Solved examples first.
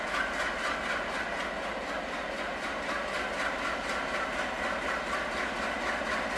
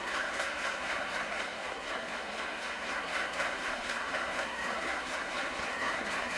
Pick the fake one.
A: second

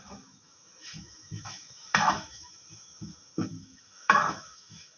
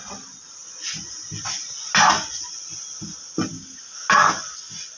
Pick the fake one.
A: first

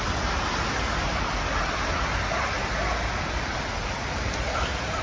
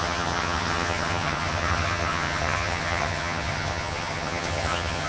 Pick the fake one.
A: second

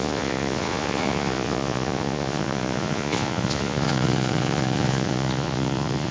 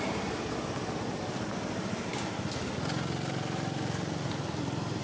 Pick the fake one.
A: first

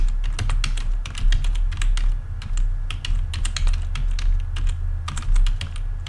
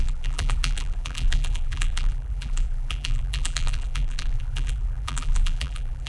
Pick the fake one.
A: second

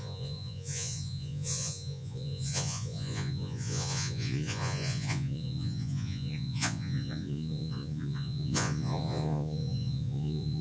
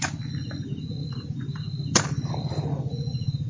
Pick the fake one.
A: first